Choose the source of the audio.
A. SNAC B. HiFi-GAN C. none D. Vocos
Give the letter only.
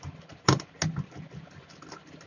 C